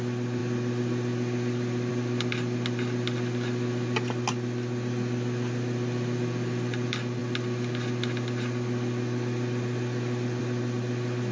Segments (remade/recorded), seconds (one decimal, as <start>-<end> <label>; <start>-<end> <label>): 0.0-11.3 recorded